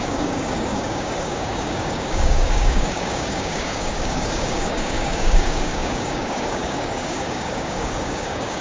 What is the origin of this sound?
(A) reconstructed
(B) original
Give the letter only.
A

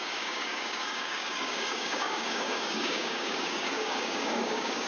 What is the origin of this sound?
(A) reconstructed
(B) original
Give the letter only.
A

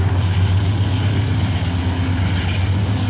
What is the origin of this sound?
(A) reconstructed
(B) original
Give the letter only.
A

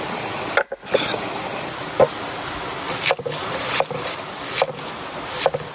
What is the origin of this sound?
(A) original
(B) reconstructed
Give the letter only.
A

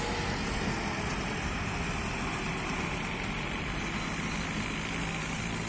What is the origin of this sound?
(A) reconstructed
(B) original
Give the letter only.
B